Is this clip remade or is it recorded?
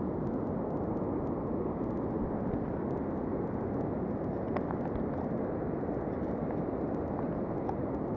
recorded